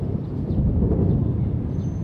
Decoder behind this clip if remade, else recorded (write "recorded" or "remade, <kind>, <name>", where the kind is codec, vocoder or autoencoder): remade, vocoder, Vocos